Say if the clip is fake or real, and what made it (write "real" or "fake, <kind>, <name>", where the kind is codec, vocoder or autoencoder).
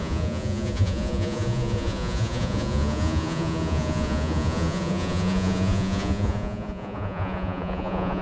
fake, vocoder, Vocos